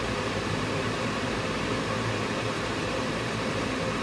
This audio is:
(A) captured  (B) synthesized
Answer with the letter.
B